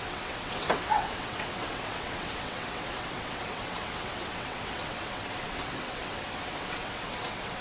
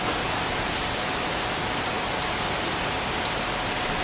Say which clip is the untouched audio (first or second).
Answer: second